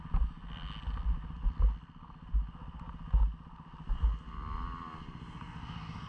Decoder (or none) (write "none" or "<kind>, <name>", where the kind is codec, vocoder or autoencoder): none